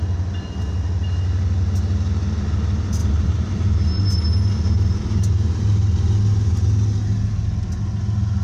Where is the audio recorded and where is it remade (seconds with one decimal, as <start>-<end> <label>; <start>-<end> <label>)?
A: 0.0-3.0 recorded; 3.0-4.0 remade; 4.0-8.4 recorded